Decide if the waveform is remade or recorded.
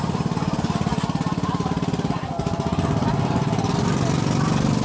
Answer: recorded